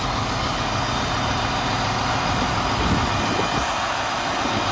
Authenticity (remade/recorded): recorded